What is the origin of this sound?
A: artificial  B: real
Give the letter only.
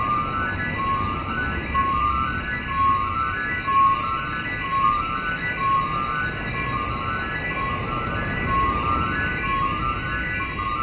B